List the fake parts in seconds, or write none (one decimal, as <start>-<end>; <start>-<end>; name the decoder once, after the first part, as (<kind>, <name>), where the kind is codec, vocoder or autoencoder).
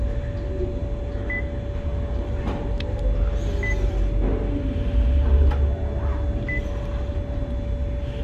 none